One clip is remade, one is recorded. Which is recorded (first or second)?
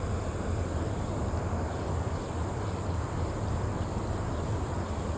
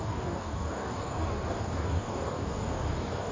first